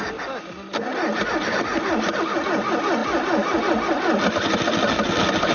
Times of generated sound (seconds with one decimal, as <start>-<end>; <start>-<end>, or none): none